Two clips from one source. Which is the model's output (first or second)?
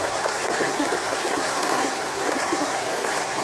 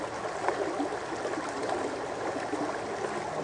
first